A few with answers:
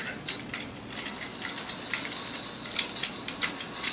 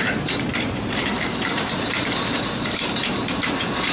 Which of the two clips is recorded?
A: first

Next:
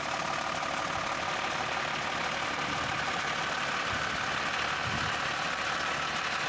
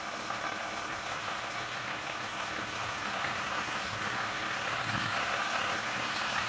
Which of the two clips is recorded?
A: first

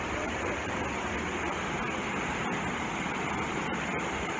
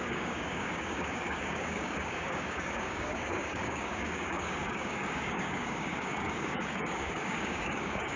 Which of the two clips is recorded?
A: first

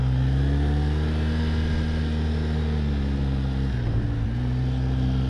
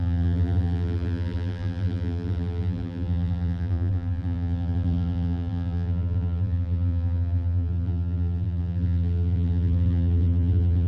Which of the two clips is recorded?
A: first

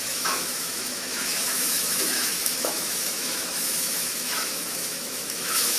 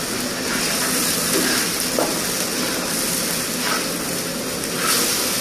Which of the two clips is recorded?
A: second